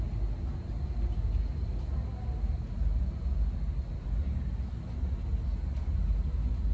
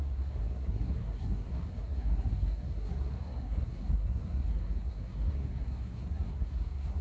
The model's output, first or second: second